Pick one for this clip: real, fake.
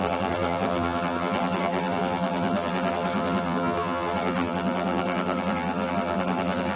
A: fake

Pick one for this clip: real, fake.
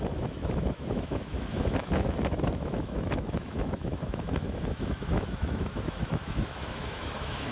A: fake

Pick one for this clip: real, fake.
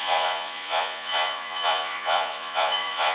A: fake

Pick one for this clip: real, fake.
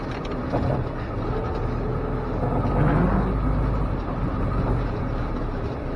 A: real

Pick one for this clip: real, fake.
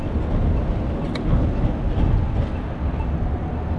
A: real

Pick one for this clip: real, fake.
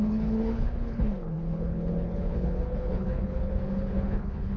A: fake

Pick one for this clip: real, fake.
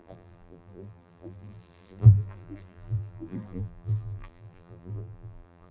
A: fake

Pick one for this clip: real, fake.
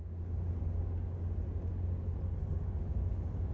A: real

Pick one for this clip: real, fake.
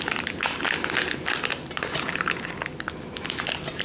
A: real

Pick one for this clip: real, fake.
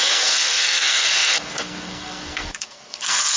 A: fake